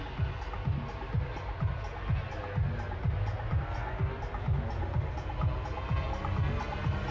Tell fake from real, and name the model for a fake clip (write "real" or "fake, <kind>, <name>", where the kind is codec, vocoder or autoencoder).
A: real